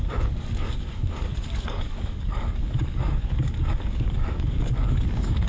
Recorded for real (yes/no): no